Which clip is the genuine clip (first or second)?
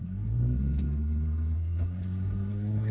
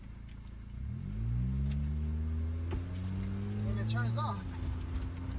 second